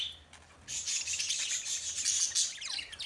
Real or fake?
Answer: real